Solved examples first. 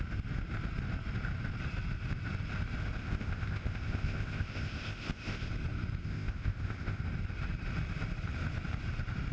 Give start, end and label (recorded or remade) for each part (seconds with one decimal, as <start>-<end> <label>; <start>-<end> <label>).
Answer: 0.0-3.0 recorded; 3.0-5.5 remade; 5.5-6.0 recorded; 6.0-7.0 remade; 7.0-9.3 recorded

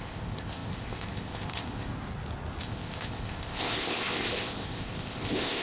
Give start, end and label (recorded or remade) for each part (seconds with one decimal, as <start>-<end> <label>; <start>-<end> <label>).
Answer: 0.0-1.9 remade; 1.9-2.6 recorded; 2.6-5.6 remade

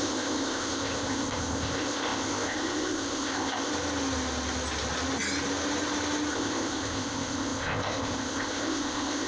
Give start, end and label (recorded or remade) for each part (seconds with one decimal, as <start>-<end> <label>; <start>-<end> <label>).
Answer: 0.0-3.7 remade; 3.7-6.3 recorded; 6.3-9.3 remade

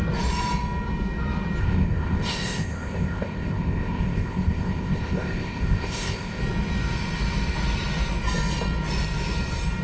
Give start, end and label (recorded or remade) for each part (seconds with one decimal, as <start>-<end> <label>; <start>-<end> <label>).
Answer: 0.0-1.6 recorded; 1.6-6.4 remade; 6.4-9.8 recorded